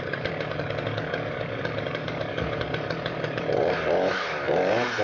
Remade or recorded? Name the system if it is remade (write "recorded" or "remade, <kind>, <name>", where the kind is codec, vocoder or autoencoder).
remade, codec, DAC